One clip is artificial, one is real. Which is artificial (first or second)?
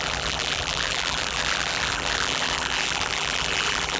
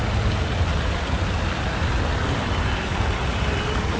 first